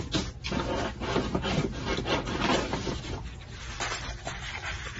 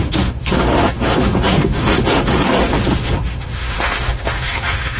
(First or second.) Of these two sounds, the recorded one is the first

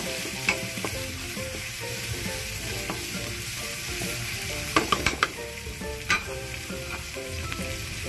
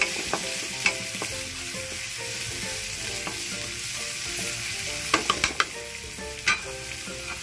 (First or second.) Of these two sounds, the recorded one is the second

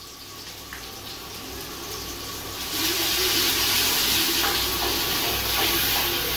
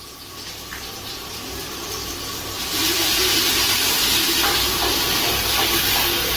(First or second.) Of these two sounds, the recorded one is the first